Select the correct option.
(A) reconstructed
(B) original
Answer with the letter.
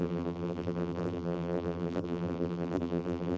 A